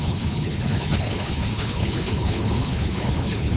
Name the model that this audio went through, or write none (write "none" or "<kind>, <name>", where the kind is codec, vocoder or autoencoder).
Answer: codec, HILCodec